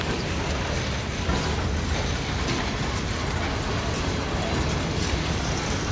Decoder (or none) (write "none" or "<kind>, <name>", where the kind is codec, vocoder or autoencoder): none